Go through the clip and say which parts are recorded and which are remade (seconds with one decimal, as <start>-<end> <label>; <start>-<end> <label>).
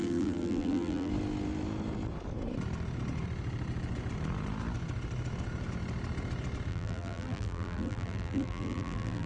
0.0-1.1 remade; 1.1-6.7 recorded; 6.7-9.3 remade